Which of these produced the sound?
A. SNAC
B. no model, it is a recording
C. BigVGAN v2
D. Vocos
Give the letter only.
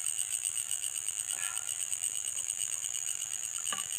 C